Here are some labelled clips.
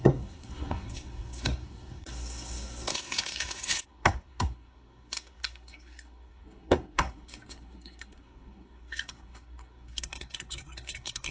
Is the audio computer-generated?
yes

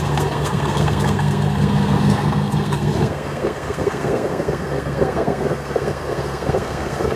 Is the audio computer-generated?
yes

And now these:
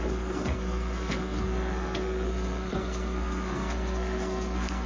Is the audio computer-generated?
yes